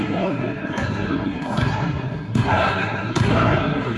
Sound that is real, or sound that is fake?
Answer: fake